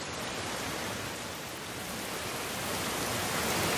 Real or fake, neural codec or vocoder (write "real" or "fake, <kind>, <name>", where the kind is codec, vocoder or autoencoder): real